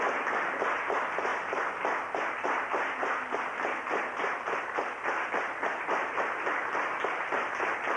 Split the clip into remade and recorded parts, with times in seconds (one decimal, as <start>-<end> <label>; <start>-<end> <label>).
0.0-8.0 recorded